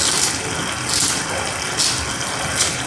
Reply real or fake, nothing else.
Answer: real